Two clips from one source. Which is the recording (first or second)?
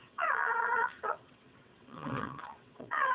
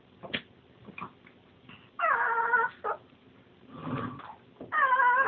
second